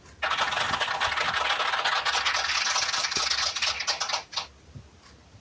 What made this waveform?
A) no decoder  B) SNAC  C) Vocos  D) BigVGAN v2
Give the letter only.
A